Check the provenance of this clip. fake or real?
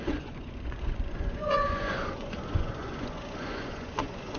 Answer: fake